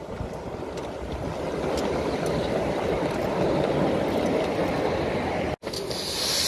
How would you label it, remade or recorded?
recorded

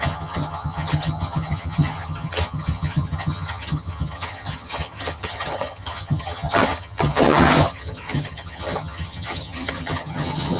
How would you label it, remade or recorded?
remade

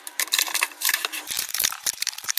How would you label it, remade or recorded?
remade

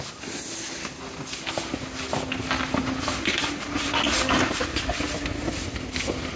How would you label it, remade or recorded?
recorded